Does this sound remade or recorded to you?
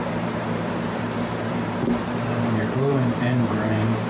remade